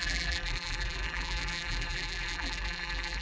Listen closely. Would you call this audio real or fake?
fake